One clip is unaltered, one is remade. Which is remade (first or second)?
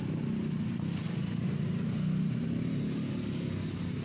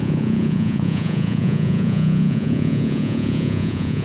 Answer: second